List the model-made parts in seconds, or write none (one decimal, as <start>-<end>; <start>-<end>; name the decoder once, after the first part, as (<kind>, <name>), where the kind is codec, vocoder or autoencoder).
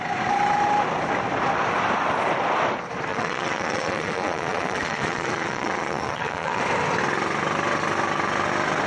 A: 3.1-6.6 (vocoder, Vocos)